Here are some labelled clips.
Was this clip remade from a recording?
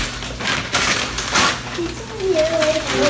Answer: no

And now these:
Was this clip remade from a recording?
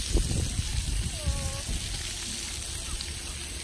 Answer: no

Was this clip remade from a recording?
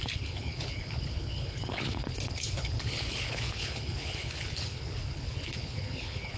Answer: yes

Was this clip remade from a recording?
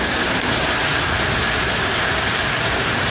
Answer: no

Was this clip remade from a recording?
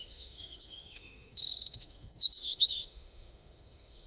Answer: yes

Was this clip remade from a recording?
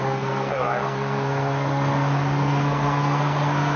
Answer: yes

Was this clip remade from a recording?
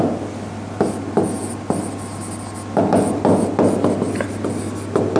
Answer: no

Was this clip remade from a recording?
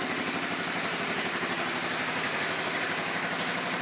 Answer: yes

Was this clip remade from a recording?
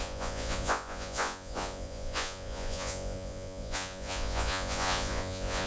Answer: yes